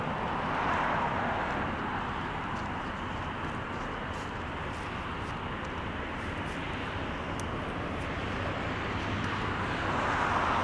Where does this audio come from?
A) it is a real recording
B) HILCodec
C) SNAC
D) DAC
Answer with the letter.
A